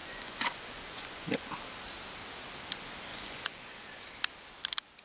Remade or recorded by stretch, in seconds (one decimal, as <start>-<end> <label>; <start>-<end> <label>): 0.0-1.5 remade; 1.5-3.1 recorded; 3.1-4.1 remade; 4.1-5.0 recorded